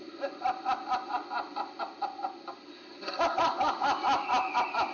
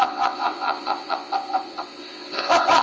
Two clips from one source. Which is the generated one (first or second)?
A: second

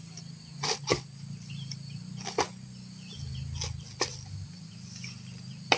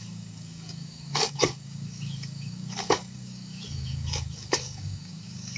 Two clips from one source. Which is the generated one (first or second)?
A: second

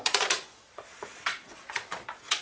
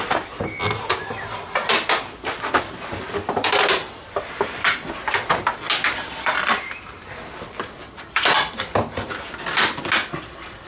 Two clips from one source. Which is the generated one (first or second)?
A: first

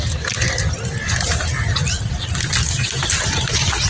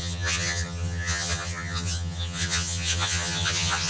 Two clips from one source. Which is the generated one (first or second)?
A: second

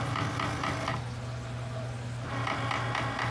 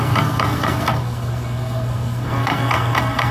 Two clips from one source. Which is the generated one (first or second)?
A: second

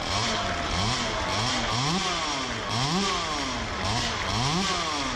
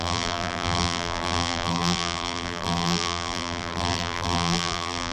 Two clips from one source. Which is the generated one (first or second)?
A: second